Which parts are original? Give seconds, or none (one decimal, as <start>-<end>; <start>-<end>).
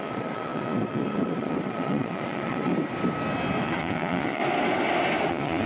2.7-3.6; 4.4-5.3